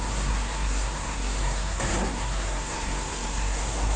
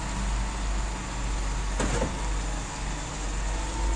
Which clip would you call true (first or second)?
second